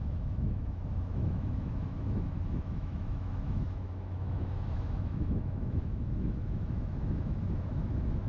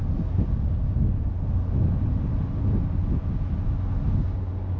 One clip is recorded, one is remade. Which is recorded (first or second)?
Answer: second